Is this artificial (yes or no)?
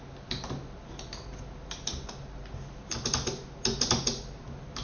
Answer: no